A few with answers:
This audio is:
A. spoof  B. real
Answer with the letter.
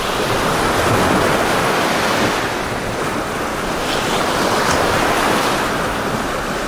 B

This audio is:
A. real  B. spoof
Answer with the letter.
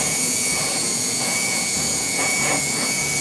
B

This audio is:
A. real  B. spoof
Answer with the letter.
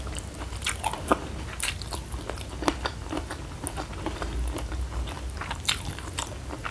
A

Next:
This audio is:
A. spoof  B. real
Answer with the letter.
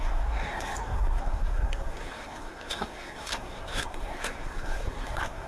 A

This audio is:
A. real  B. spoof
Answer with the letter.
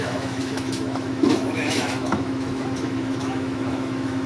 B